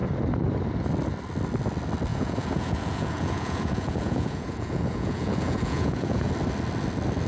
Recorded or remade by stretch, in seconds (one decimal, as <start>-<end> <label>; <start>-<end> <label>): 0.0-2.1 recorded; 2.1-6.3 remade; 6.3-7.3 recorded